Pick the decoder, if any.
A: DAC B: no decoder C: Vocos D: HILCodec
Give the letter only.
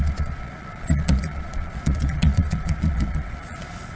C